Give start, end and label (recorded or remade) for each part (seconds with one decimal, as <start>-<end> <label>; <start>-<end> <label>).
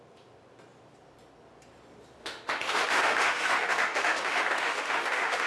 0.0-2.2 recorded; 2.2-5.5 remade